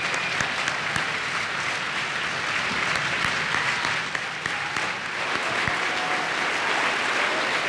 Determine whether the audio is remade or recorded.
recorded